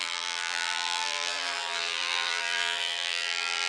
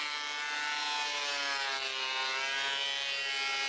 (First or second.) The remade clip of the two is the first